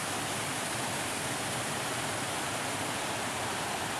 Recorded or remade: recorded